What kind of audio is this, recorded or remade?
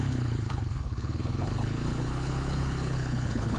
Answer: remade